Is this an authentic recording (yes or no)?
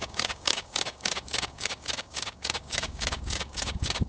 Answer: no